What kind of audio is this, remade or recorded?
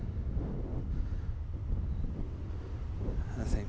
recorded